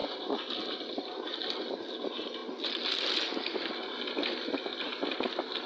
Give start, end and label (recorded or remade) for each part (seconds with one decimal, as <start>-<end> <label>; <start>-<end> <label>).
0.0-1.4 remade; 1.4-5.7 recorded